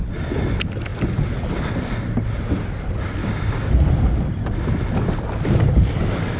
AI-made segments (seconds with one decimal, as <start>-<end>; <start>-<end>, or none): 3.2-3.7